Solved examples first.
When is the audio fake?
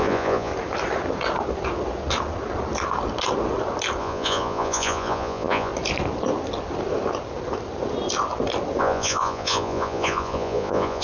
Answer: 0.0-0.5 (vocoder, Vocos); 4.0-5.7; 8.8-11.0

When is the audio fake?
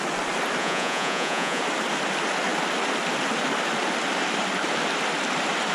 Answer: 0.6-1.6 (vocoder, Vocos)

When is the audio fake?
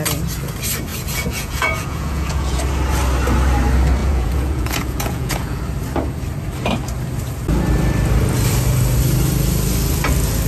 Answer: 0.9-2.6 (vocoder, Vocos); 4.0-5.6